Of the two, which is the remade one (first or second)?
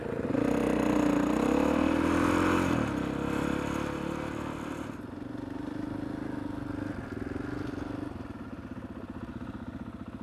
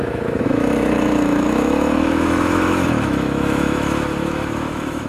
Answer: second